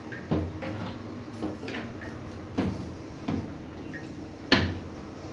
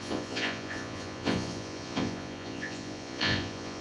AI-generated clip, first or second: second